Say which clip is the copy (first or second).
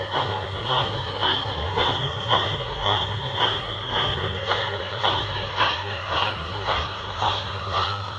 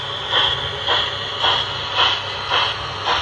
first